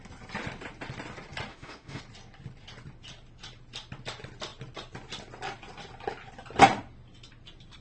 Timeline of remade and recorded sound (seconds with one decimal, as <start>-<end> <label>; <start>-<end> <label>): 0.0-1.5 recorded; 1.5-2.0 remade; 2.0-7.8 recorded